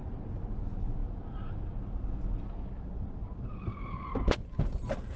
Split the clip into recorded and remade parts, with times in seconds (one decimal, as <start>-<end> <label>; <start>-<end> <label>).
0.0-5.2 recorded